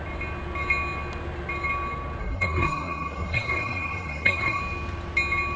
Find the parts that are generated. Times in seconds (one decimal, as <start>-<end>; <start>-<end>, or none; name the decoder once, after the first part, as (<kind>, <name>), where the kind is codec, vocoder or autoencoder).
2.2-4.6 (codec, SNAC)